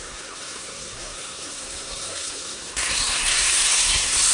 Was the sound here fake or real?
fake